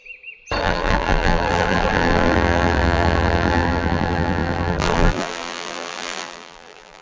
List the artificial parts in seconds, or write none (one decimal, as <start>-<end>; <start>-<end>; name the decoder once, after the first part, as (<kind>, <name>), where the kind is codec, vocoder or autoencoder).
0.6-7.0 (vocoder, BigVGAN v2)